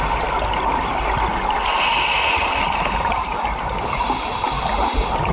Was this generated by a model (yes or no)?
no